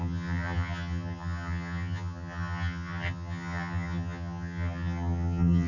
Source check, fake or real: fake